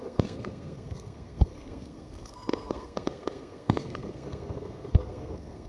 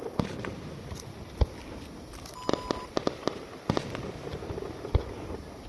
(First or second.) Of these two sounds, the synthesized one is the first